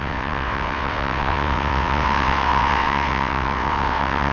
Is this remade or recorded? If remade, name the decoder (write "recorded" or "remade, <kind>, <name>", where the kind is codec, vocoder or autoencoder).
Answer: remade, vocoder, WaveNeXt